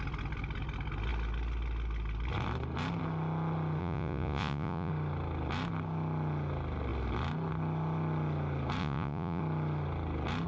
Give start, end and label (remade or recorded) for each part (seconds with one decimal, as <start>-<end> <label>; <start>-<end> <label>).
0.0-3.8 recorded; 3.8-4.9 remade; 4.9-8.8 recorded; 8.8-9.4 remade; 9.4-10.5 recorded